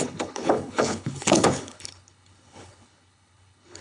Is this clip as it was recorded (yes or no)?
no